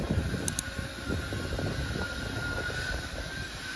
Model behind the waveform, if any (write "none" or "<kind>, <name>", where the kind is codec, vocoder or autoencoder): none